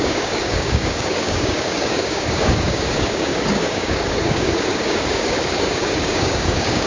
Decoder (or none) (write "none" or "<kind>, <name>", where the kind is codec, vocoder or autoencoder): codec, DAC